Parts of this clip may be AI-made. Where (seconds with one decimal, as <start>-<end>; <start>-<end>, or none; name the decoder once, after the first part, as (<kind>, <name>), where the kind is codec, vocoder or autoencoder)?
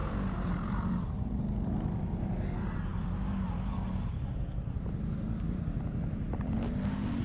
none